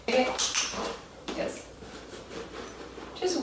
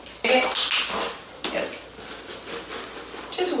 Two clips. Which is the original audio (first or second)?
second